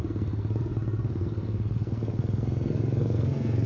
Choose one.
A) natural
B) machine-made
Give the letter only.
B